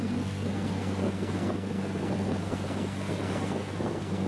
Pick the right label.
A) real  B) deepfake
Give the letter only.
B